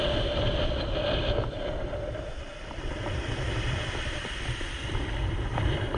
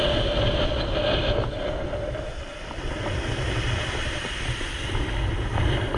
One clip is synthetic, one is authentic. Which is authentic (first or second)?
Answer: second